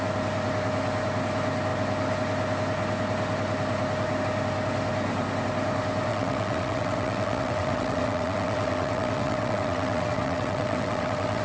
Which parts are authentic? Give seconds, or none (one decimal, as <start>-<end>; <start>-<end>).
0.0-6.1